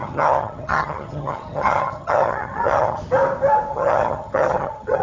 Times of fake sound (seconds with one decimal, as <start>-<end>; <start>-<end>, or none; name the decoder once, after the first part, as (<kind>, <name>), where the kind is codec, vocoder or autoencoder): 0.0-3.0 (vocoder, HiFi-GAN); 3.7-5.0